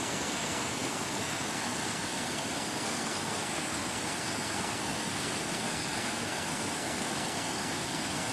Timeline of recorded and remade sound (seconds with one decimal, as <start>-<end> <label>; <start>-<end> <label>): 0.0-8.3 remade